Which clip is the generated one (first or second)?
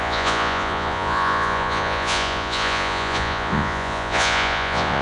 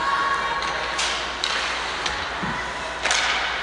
first